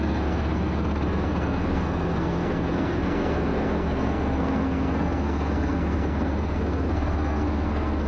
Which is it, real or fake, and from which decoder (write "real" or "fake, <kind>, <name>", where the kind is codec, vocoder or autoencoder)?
fake, codec, SNAC